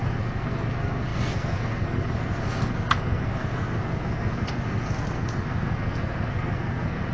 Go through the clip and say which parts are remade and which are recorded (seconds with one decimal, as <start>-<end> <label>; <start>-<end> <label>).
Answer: 0.0-7.1 remade